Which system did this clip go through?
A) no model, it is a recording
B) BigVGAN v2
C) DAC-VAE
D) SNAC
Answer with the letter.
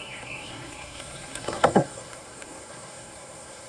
D